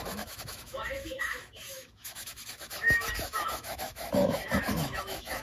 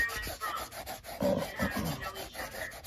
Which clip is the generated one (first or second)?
first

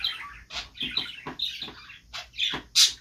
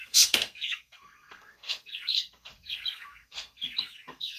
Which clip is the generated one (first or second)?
second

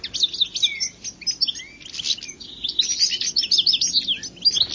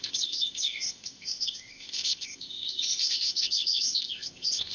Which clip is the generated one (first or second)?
second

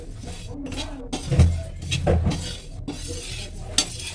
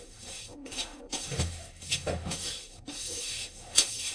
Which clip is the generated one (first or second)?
second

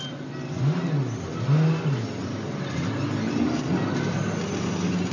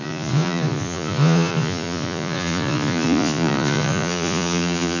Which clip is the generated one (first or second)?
second